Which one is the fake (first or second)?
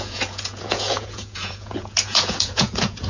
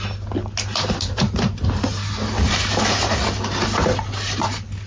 first